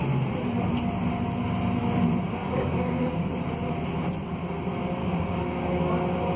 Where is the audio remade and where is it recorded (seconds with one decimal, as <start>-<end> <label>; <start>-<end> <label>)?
0.0-2.4 recorded; 2.4-3.3 remade; 3.3-5.0 recorded; 5.0-5.9 remade; 5.9-6.4 recorded